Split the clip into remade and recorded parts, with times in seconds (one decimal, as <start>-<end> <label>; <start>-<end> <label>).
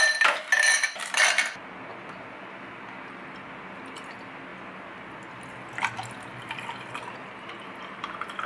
0.0-8.5 recorded